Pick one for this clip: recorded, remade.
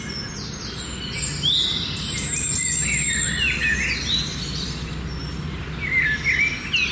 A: recorded